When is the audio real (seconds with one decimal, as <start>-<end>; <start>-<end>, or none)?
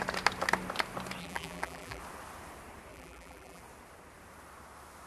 0.0-1.2; 2.0-2.9; 3.6-5.1